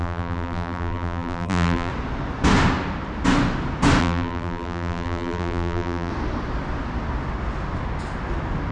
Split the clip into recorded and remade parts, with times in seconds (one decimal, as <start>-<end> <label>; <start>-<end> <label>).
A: 0.0-1.9 remade; 1.9-4.0 recorded; 4.0-6.1 remade; 6.1-8.7 recorded